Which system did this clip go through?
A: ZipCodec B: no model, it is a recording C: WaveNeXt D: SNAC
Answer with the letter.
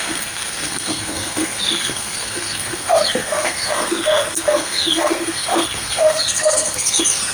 D